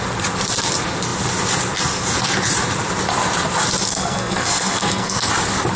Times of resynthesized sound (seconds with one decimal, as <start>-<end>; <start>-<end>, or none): 3.9-5.3